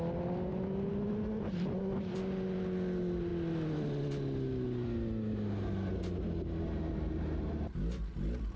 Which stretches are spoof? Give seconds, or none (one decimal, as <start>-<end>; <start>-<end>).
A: none